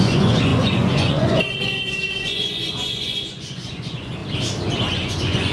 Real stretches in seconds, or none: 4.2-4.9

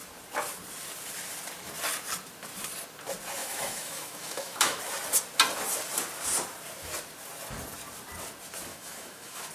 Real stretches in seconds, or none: 0.0-3.4; 4.8-8.7

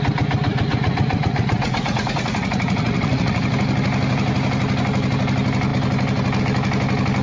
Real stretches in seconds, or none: 0.0-0.5; 3.4-7.2